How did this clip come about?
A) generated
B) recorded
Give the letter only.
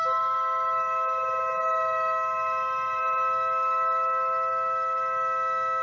A